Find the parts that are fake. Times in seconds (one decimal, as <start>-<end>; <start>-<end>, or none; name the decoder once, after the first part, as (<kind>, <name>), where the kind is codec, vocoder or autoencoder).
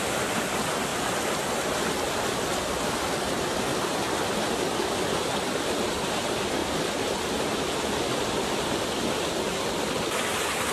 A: 0.0-0.9 (vocoder, BigVGAN v2); 3.1-3.7; 5.6-6.6; 10.1-10.7